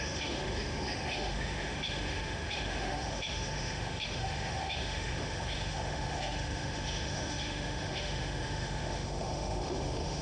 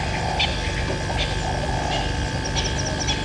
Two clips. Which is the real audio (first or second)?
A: second